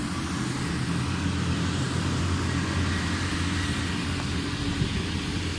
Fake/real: real